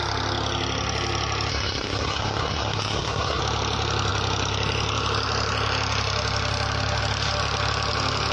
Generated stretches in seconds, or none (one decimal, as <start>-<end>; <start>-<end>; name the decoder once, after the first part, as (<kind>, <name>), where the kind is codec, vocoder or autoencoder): 1.5-3.4 (codec, SNAC)